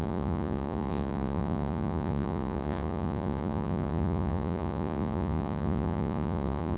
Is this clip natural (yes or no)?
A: no